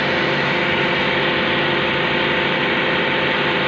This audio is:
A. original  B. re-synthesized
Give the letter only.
A